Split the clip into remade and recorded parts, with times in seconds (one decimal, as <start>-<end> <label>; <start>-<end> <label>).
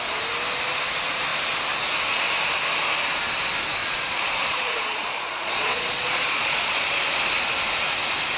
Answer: 0.0-3.8 recorded; 3.8-7.0 remade; 7.0-8.4 recorded